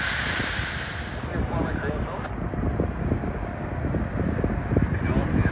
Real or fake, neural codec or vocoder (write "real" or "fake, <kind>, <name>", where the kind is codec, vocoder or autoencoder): real